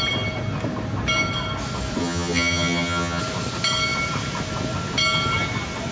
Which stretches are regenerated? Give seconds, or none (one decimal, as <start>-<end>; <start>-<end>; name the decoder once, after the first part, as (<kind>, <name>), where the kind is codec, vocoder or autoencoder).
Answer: 2.0-3.2 (vocoder, HiFi-GAN)